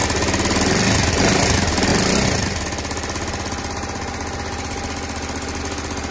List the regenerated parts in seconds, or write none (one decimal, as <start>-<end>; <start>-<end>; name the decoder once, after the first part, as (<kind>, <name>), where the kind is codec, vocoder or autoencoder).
none